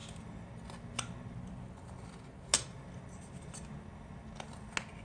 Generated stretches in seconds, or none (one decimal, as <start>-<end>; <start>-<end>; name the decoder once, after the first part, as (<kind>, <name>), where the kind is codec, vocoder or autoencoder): none